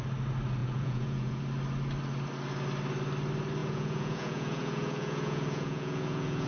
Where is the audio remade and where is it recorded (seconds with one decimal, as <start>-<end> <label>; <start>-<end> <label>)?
0.0-0.6 recorded; 0.6-1.4 remade; 1.4-3.6 recorded; 3.6-6.5 remade